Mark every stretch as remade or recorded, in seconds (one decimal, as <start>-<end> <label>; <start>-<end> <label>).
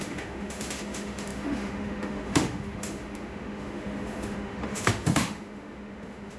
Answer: 0.0-6.4 remade